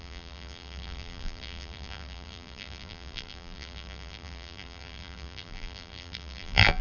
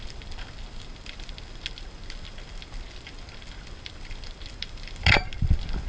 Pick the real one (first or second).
second